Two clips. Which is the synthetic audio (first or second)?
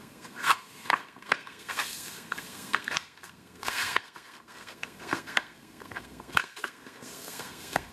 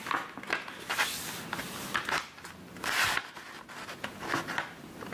first